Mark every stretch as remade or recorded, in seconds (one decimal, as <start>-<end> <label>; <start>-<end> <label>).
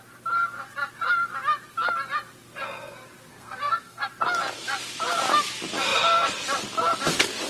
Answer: 0.0-3.3 recorded; 3.3-4.1 remade; 4.1-7.5 recorded